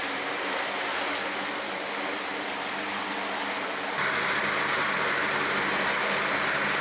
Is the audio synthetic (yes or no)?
no